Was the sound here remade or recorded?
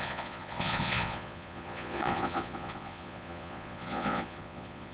remade